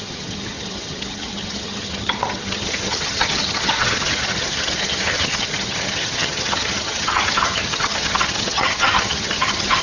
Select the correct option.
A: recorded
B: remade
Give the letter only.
B